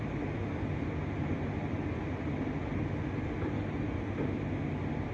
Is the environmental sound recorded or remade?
recorded